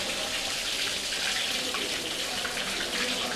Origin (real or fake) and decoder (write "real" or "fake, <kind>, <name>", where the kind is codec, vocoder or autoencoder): real